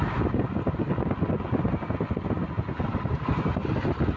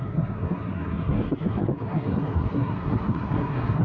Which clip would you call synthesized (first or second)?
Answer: second